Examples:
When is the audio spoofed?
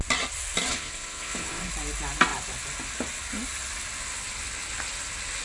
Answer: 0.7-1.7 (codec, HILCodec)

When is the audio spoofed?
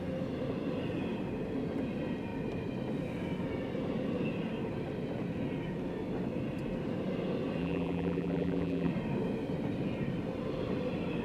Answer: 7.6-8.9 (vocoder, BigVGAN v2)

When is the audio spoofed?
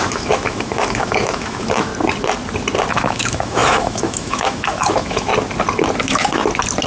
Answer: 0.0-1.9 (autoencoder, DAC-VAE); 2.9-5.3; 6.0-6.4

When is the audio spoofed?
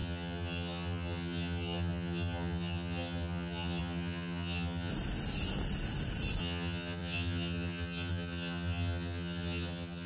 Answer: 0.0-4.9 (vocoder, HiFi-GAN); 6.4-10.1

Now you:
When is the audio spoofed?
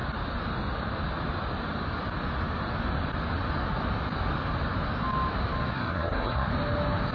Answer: 5.7-6.5 (codec, SNAC)